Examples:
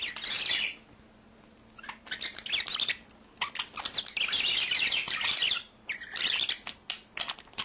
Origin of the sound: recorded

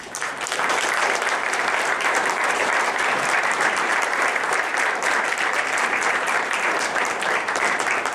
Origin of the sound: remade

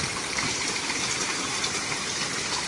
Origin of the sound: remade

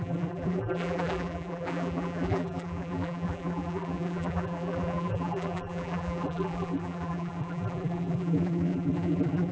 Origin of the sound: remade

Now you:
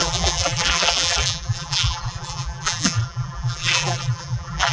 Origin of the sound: remade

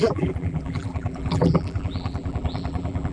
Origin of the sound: remade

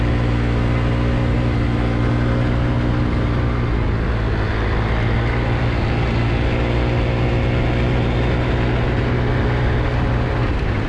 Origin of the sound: recorded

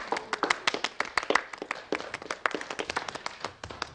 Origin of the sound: recorded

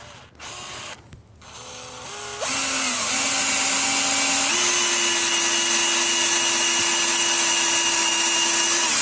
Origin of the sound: recorded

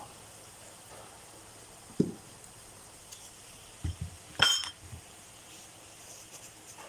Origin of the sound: remade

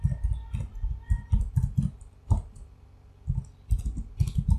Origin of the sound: recorded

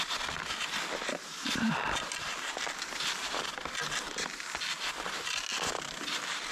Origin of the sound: recorded